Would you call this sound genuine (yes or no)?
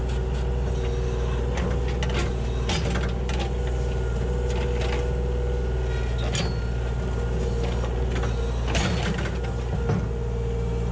yes